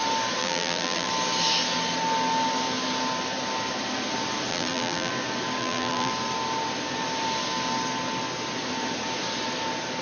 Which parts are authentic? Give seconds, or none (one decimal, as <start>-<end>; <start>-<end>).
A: 0.0-0.4; 1.1-4.5; 5.1-5.6; 6.1-10.0